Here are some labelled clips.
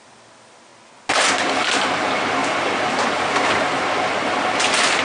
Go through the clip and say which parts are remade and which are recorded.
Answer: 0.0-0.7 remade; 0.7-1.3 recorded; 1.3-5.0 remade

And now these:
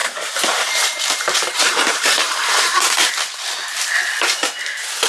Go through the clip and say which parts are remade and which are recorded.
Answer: 0.0-3.1 remade; 3.1-5.1 recorded